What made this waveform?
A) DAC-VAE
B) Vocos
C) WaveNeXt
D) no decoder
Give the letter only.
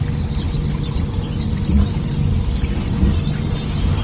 D